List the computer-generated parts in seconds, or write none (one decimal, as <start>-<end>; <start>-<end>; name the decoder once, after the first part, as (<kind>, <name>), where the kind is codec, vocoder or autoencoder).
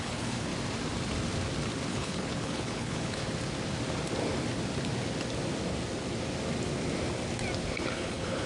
0.0-0.5 (codec, HILCodec); 1.9-3.2; 7.9-8.5